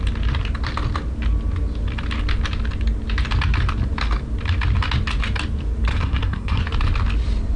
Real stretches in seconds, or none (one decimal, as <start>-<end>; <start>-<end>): 0.0-5.9; 6.6-7.6